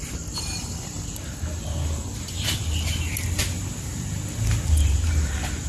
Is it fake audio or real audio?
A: real